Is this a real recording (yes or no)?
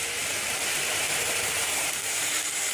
no